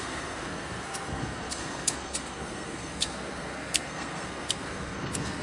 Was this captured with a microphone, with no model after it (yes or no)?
no